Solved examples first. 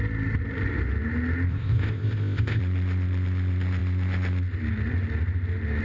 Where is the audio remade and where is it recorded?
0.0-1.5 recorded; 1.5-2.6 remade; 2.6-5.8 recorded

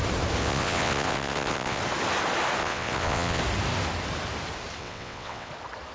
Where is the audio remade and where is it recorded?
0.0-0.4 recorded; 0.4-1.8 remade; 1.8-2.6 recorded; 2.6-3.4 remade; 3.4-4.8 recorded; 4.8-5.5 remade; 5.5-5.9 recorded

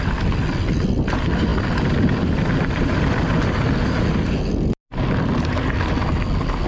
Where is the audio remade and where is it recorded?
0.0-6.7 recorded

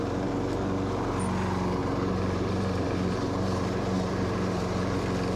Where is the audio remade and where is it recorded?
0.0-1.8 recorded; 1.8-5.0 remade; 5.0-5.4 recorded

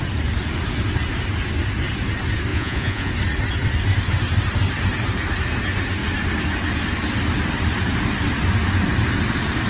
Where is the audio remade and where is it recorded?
0.0-2.5 recorded; 2.5-3.1 remade; 3.1-9.7 recorded